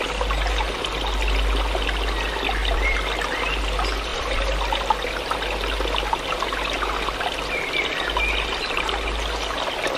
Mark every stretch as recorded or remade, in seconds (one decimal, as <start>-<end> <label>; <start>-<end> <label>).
0.0-2.6 recorded; 2.6-3.6 remade; 3.6-4.1 recorded; 4.1-7.5 remade; 7.5-10.0 recorded